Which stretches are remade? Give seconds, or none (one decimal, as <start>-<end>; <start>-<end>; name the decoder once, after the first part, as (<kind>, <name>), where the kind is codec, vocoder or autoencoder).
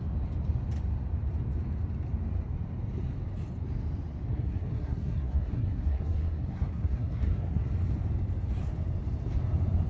4.3-7.7 (codec, SNAC)